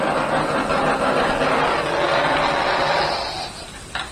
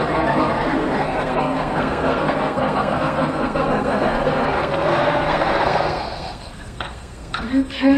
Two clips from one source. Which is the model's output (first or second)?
second